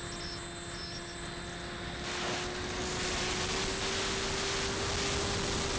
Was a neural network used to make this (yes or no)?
no